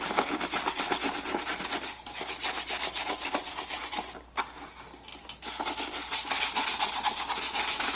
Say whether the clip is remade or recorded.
recorded